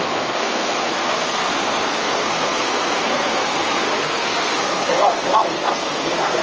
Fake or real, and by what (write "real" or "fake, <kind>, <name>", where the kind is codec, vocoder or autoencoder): fake, codec, SNAC